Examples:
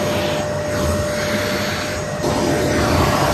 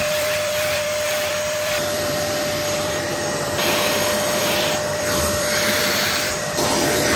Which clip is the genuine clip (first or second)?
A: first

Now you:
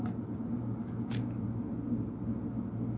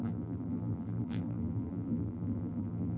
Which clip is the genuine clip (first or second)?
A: first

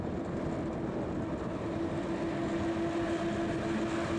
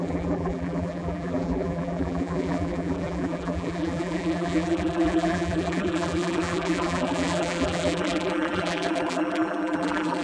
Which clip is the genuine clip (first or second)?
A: first